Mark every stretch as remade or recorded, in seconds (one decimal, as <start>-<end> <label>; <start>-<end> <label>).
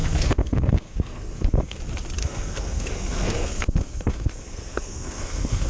0.0-1.8 remade; 1.8-2.2 recorded; 2.2-5.7 remade